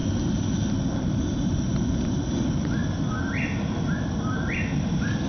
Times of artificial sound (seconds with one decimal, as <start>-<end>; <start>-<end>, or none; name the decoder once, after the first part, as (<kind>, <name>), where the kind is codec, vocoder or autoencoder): none